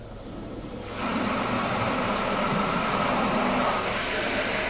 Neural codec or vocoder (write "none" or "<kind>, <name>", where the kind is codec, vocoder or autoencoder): none